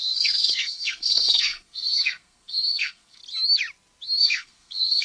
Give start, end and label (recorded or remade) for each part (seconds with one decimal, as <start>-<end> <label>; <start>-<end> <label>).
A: 0.0-3.2 remade; 3.2-4.2 recorded; 4.2-5.0 remade